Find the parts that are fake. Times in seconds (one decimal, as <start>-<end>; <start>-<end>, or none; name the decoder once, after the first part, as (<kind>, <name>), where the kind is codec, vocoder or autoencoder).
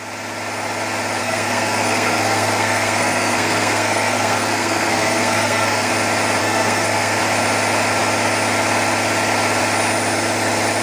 1.2-5.9 (codec, SNAC); 6.4-7.2